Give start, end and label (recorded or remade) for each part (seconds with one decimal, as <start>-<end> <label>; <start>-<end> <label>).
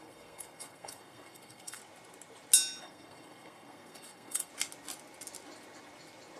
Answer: 0.0-1.8 remade; 1.8-2.8 recorded; 2.8-4.5 remade; 4.5-6.4 recorded